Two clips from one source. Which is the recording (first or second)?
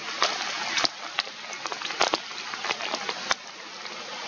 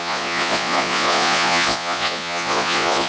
first